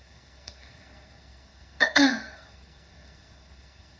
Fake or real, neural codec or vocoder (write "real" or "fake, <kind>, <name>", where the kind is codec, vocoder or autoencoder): fake, codec, SNAC